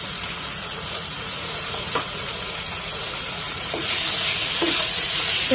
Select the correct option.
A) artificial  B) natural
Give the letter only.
A